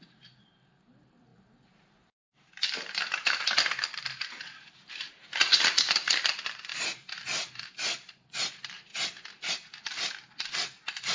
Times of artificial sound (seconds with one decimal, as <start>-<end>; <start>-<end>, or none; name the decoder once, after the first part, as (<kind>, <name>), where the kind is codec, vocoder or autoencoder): 0.0-8.9 (vocoder, BigVGAN v2); 9.4-11.1